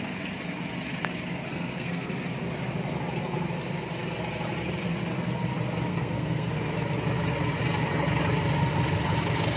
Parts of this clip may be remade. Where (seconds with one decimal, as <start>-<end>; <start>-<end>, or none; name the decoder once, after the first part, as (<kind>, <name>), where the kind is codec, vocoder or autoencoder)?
1.5-2.1 (codec, SNAC); 5.9-6.5

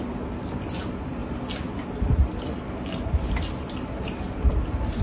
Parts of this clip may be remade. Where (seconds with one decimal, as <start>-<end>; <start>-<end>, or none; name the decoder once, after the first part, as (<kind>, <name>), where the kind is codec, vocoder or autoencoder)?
none

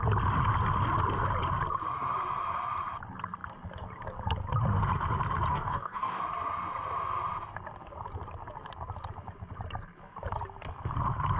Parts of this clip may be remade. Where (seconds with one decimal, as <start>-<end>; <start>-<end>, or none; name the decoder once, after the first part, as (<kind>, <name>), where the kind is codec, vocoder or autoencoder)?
5.5-6.2 (codec, DAC)

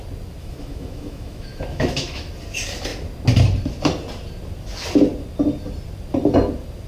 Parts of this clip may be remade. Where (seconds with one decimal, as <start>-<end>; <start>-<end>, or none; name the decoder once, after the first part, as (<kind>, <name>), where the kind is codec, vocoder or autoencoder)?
0.4-2.3 (autoencoder, DAC-VAE)

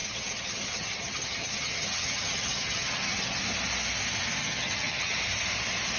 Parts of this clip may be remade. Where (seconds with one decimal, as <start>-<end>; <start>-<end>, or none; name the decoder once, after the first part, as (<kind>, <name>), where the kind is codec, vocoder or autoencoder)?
0.0-3.4 (vocoder, HiFi-GAN); 4.4-5.2

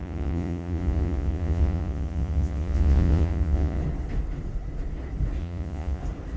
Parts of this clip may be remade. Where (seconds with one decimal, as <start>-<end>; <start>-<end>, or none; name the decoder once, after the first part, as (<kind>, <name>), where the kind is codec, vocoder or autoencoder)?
0.0-3.8 (vocoder, Vocos); 5.4-6.0

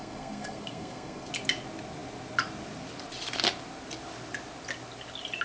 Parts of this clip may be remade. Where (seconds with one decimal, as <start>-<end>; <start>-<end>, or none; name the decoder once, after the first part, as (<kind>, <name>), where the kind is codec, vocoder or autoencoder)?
0.0-1.3 (codec, SNAC)